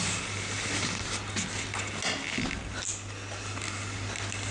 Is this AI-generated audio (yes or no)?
no